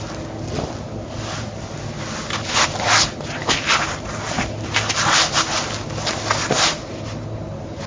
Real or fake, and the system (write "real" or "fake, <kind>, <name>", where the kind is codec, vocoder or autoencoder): real